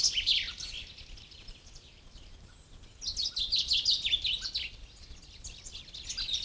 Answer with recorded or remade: recorded